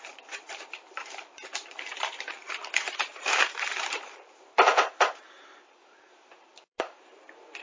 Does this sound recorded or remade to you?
remade